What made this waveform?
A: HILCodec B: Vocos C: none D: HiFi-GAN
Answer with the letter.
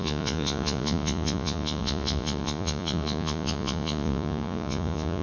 B